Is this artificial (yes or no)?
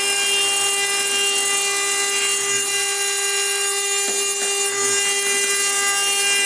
no